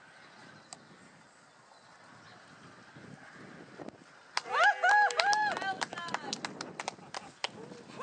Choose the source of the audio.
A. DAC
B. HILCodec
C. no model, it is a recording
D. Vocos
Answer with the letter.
C